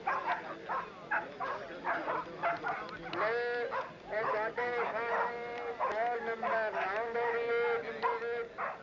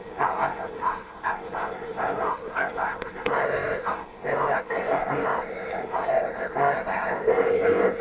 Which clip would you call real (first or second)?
first